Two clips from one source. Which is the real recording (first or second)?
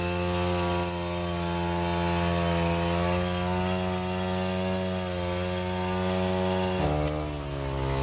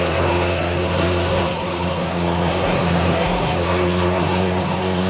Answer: first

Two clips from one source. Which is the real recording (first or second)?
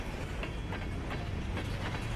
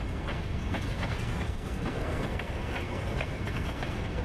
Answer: first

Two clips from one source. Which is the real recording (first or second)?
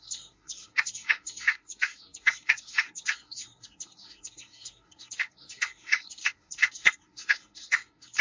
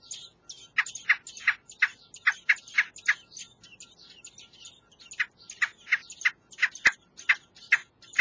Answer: second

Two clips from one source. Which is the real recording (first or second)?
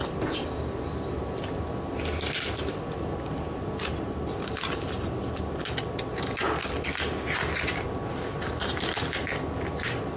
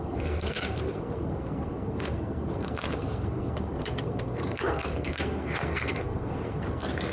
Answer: first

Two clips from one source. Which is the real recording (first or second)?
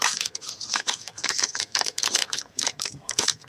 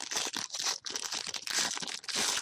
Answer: second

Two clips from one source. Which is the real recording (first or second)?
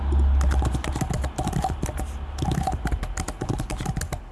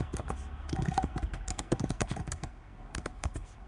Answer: first